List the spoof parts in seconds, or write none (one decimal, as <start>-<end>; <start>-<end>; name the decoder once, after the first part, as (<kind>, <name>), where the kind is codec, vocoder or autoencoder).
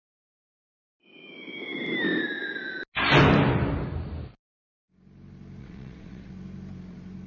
5.6-6.3 (vocoder, WaveNeXt)